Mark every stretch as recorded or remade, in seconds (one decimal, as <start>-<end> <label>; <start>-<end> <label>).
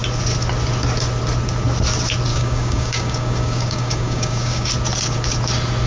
0.0-2.3 recorded; 2.3-4.7 remade; 4.7-5.9 recorded